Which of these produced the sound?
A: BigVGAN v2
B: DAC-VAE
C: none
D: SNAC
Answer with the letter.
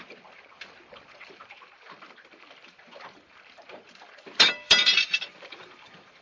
A